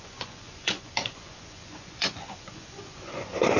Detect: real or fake fake